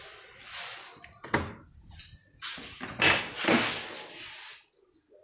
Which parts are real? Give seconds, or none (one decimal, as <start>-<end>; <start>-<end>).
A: 0.0-2.2; 2.8-5.2